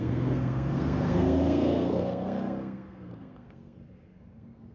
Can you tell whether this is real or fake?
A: fake